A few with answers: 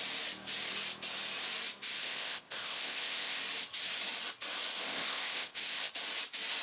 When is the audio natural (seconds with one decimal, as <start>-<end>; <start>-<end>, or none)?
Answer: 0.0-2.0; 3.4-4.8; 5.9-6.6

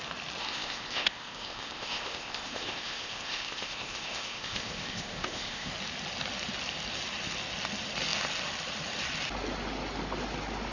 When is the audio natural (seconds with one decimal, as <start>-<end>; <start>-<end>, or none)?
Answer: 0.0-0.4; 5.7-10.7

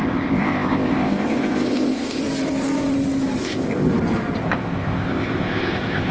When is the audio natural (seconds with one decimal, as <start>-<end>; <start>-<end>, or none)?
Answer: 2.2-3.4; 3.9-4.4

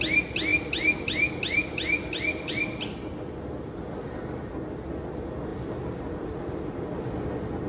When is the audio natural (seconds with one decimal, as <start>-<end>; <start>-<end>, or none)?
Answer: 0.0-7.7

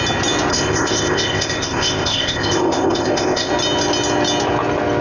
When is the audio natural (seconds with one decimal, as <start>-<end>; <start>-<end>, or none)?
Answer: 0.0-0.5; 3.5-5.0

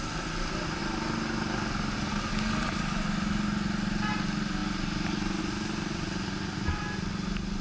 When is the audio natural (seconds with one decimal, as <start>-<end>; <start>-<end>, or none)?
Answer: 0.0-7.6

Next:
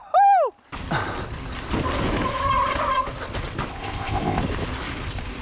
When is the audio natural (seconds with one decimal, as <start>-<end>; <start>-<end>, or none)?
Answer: 0.0-3.7; 4.4-5.4